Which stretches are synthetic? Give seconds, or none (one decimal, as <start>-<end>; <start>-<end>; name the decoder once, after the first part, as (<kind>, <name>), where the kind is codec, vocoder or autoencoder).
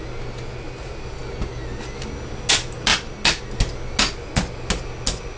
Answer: none